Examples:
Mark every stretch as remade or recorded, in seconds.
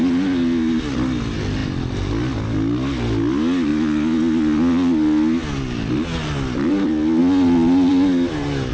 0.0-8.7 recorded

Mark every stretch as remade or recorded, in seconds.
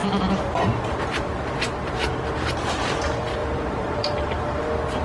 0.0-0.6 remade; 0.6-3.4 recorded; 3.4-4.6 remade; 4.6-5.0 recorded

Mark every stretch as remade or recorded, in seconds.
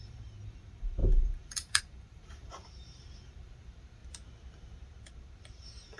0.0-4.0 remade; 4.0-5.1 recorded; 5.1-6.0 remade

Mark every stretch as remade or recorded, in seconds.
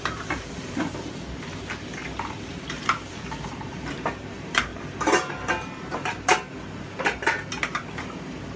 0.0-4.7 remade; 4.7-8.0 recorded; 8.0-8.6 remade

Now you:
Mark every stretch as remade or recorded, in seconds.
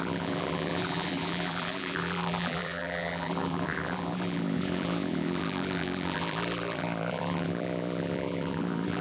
0.0-9.0 remade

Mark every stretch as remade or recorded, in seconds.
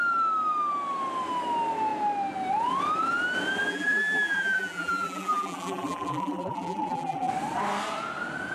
0.0-3.7 recorded; 3.7-7.3 remade; 7.3-8.5 recorded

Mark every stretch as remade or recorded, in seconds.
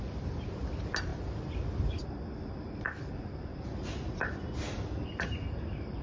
0.0-3.5 remade; 3.5-5.5 recorded; 5.5-6.0 remade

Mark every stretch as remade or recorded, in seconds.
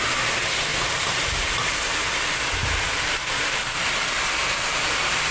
0.0-0.7 recorded; 0.7-2.0 remade; 2.0-2.6 recorded; 2.6-3.2 remade; 3.2-4.4 recorded; 4.4-5.3 remade